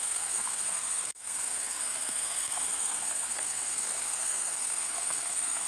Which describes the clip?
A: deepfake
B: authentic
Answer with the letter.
A